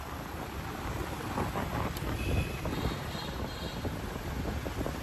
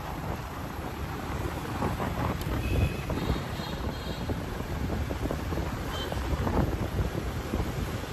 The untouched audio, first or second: first